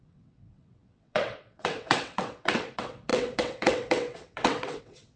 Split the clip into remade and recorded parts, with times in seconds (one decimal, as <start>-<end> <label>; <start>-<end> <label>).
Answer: 0.0-5.2 remade